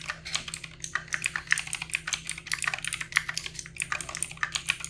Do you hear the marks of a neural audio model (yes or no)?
no